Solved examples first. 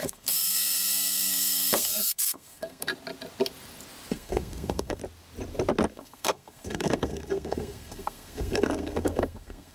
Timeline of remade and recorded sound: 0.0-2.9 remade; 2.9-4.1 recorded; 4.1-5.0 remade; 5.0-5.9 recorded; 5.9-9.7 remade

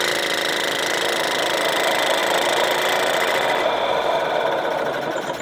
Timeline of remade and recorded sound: 0.0-5.4 recorded

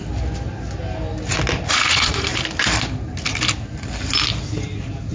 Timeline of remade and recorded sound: 0.0-1.6 recorded; 1.6-2.3 remade; 2.3-5.1 recorded

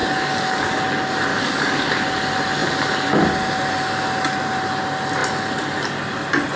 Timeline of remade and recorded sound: 0.0-0.8 remade; 0.8-1.3 recorded; 1.3-1.9 remade; 1.9-6.6 recorded

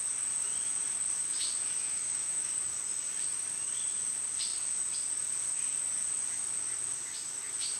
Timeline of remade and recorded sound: 0.0-1.8 recorded; 1.8-2.5 remade; 2.5-7.8 recorded